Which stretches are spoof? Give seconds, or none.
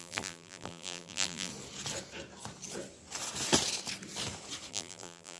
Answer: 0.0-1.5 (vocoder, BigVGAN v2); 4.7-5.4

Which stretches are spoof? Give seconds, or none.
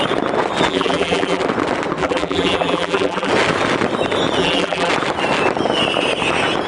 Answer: 0.7-1.4 (vocoder, BigVGAN v2); 2.0-3.3; 4.4-4.9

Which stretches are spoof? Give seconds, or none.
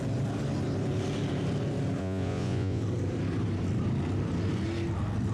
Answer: 2.0-2.8 (vocoder, Vocos)